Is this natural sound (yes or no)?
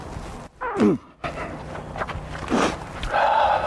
yes